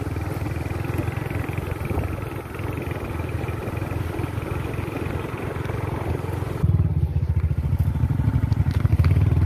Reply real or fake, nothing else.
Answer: real